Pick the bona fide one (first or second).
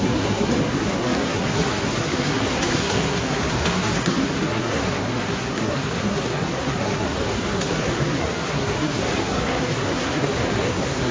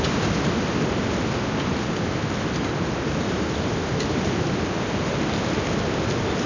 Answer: second